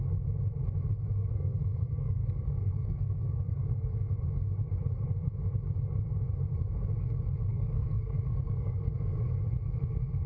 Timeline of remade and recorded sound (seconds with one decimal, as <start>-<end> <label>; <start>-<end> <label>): 0.0-1.2 recorded; 1.2-4.1 remade; 4.1-7.5 recorded; 7.5-8.8 remade; 8.8-10.3 recorded